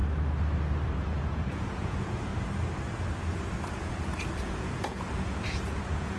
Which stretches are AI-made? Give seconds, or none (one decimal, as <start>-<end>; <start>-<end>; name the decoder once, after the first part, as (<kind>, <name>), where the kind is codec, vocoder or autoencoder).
1.0-2.3 (vocoder, Vocos); 3.8-6.2